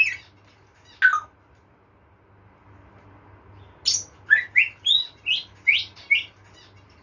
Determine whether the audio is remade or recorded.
recorded